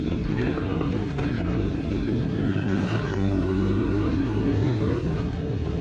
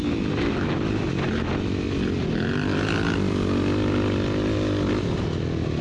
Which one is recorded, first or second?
second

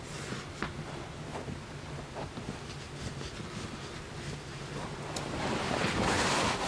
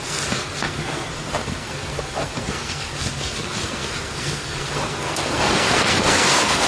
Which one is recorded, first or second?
first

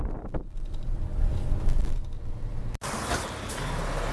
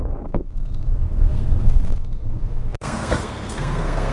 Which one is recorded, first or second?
first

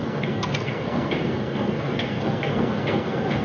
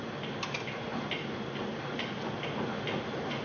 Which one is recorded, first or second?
second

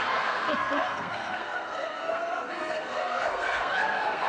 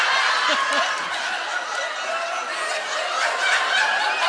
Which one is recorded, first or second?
second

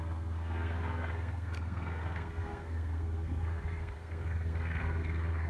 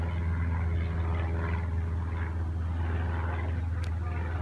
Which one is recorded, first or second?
second